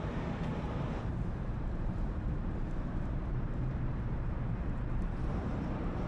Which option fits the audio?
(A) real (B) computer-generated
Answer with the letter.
B